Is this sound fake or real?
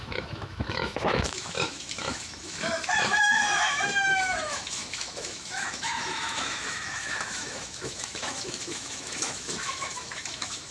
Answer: fake